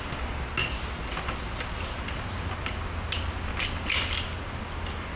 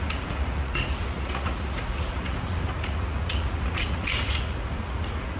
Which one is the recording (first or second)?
first